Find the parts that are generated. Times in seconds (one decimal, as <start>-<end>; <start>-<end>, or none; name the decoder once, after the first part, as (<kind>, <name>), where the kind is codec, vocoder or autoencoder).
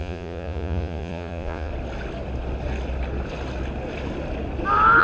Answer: 0.0-1.7 (vocoder, Vocos)